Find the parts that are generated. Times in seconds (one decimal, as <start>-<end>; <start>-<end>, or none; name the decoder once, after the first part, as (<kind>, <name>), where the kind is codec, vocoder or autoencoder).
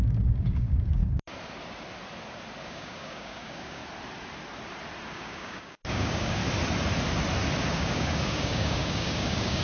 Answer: 0.0-1.0 (codec, DAC); 2.6-3.8; 5.1-6.4; 7.7-9.6